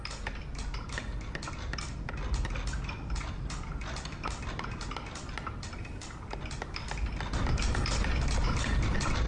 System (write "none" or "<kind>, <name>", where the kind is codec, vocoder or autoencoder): none